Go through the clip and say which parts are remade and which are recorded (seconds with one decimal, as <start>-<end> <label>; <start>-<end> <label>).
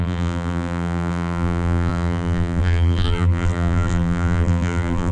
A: 0.0-5.1 remade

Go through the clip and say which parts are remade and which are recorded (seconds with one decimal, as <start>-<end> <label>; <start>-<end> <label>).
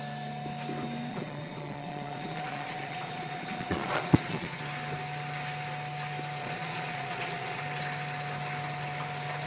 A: 0.0-1.1 recorded; 1.1-4.6 remade; 4.6-6.4 recorded; 6.4-7.6 remade; 7.6-9.5 recorded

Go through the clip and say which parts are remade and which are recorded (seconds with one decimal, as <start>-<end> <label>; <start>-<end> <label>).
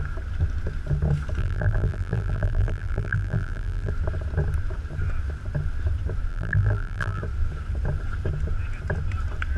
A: 0.0-1.4 recorded; 1.4-3.9 remade; 3.9-6.3 recorded; 6.3-7.2 remade; 7.2-9.6 recorded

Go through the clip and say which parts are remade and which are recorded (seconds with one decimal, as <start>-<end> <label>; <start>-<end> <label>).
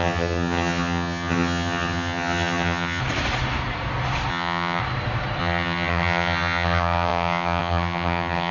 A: 0.0-3.0 remade; 3.0-4.3 recorded; 4.3-4.8 remade; 4.8-5.4 recorded; 5.4-8.5 remade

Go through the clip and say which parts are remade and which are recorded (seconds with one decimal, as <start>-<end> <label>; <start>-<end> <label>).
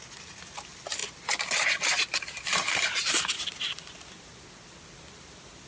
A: 0.0-5.7 recorded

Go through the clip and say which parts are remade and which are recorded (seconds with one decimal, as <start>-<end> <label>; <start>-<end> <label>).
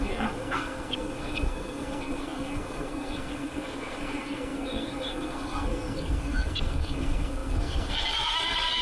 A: 0.0-8.8 remade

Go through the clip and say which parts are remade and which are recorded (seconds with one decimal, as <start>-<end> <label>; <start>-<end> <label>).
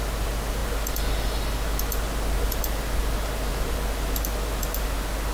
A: 0.0-5.3 recorded